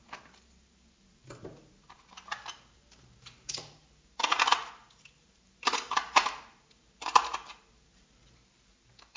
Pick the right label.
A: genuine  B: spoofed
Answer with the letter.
B